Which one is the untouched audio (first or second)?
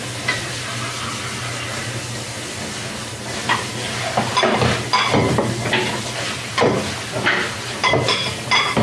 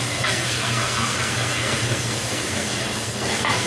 first